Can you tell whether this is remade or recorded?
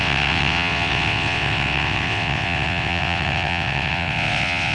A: remade